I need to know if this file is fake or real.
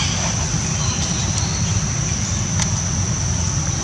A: real